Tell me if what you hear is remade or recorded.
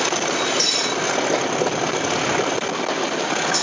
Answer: recorded